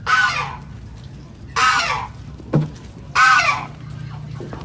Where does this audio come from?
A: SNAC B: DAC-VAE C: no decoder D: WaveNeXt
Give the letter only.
C